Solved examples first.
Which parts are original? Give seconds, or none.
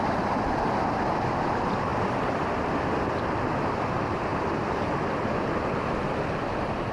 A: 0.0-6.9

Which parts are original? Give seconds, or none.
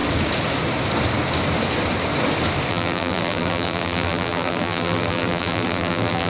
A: 0.0-2.7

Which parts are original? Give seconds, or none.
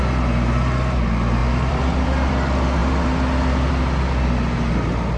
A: 0.0-1.4; 2.3-5.2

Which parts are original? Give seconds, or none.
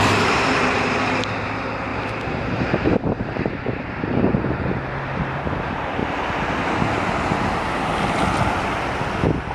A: 1.9-2.6; 6.0-9.5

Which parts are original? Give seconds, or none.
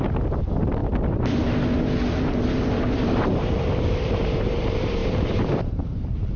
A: 0.8-2.2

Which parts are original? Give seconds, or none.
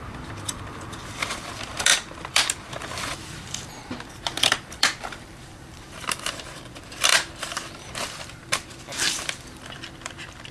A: none